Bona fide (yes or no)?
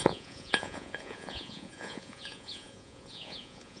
no